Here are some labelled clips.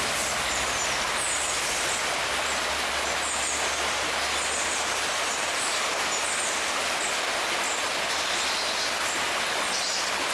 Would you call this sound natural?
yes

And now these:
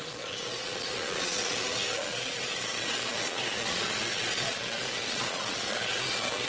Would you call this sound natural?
no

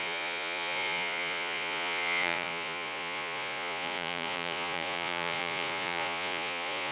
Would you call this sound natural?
no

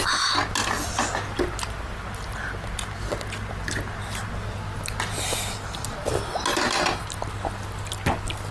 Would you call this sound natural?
yes